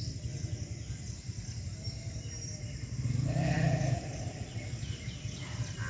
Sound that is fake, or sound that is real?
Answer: real